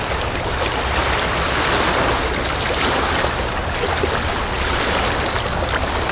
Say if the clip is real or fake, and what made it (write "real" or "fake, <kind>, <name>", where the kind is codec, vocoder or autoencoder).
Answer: real